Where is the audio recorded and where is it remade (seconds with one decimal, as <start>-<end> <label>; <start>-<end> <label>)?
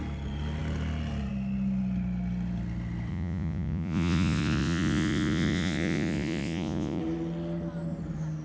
0.0-3.1 recorded; 3.1-7.0 remade; 7.0-8.4 recorded